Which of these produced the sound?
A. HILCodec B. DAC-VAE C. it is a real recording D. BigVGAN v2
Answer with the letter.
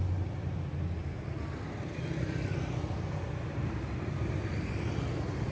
C